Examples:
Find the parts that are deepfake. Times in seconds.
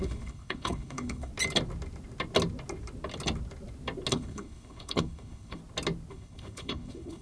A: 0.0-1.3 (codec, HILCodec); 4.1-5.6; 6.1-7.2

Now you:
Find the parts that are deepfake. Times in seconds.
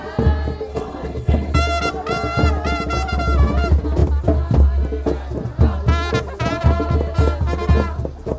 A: 0.7-1.5 (codec, HILCodec)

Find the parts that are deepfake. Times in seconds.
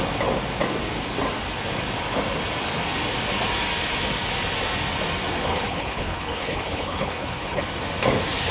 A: 5.5-7.6 (codec, HILCodec)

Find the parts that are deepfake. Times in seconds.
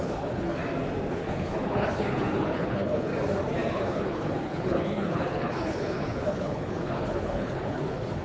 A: 0.0-0.6 (codec, HILCodec); 1.1-3.1; 3.7-8.2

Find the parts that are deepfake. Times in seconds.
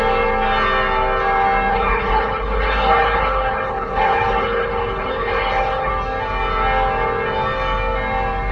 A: 1.7-5.9 (codec, HILCodec)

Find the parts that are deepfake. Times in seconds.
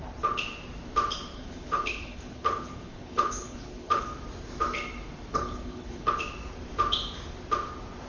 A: 1.3-4.0 (codec, HILCodec); 5.3-6.1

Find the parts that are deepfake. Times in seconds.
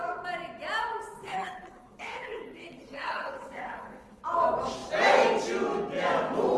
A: 1.2-4.2 (codec, HILCodec)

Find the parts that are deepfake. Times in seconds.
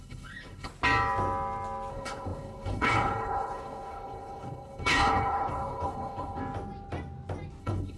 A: 0.0-0.7 (codec, HILCodec); 1.9-6.4; 7.6-8.0